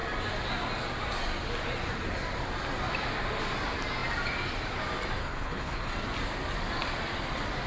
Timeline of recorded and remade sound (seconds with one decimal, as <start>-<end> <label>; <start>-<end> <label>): 0.0-5.2 recorded; 5.2-5.9 remade; 5.9-7.7 recorded